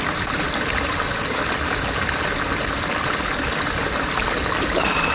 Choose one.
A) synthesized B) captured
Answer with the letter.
B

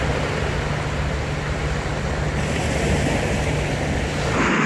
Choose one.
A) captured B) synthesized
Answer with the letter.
A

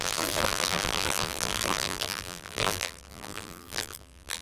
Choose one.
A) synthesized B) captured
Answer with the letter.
A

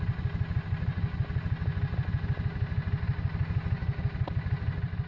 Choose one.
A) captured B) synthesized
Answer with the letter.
A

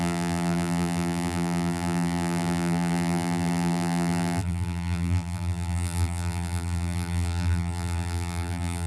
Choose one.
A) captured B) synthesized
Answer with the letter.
B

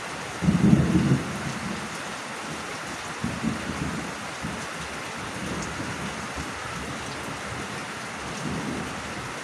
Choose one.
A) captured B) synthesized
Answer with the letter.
A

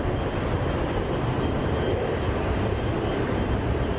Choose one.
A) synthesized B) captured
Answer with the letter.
A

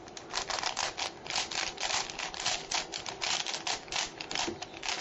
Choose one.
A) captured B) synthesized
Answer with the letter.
B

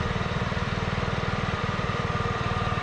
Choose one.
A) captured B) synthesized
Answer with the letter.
B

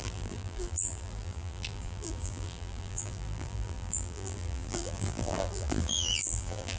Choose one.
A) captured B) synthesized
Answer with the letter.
B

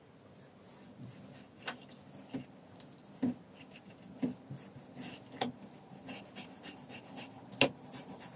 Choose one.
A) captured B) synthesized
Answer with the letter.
A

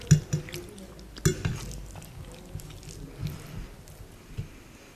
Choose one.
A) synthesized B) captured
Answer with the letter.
B